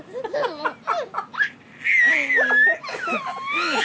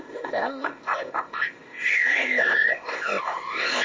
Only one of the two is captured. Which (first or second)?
first